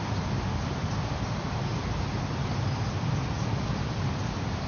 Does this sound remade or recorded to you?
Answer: recorded